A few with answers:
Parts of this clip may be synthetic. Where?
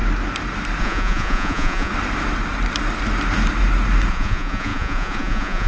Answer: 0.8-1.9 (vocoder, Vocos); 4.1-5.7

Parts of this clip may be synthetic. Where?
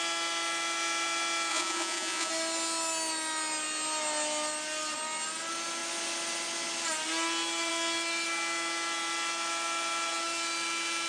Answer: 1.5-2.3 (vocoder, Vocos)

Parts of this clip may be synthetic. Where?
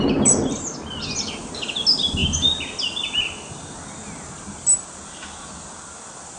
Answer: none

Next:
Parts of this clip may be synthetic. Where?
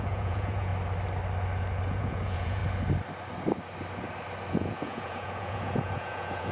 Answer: 0.0-0.7 (vocoder, Vocos); 1.9-2.6; 4.5-6.5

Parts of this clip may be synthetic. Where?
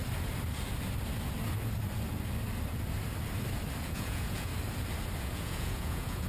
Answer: 3.8-4.5 (vocoder, Vocos); 5.2-6.3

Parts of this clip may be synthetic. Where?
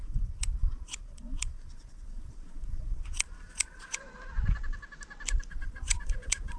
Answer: 0.0-4.0 (vocoder, Vocos); 5.5-6.6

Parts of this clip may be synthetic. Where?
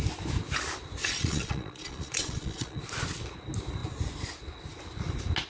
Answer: 1.0-2.8 (vocoder, Vocos)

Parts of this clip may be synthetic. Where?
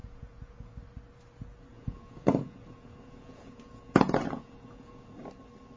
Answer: 0.0-0.7 (vocoder, Vocos); 1.7-5.2